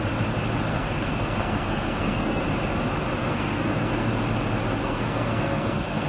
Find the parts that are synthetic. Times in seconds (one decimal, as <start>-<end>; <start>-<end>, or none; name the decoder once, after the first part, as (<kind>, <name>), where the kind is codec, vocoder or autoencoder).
0.7-2.4 (codec, SNAC); 3.2-4.1; 4.8-6.1